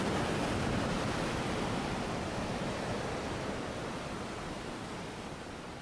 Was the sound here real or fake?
fake